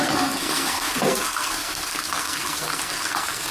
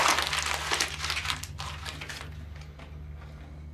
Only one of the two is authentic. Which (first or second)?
second